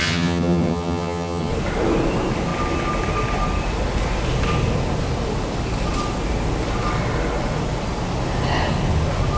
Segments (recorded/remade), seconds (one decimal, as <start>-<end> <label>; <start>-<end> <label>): 0.0-1.5 remade; 1.5-9.4 recorded